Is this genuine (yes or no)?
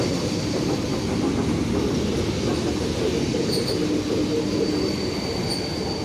yes